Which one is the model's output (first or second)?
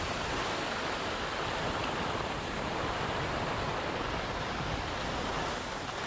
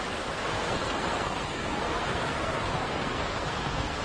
second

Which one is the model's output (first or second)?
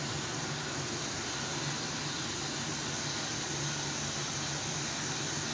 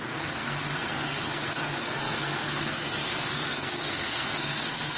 second